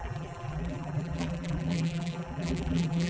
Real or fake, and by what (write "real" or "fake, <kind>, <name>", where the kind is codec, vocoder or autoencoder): fake, vocoder, BigVGAN v2